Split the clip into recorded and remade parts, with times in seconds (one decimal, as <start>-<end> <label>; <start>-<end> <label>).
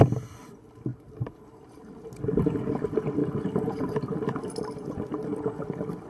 0.0-0.9 recorded; 0.9-2.1 remade; 2.1-3.2 recorded; 3.2-3.9 remade; 3.9-6.1 recorded